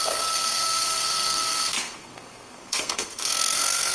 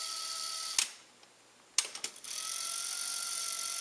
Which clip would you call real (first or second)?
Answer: second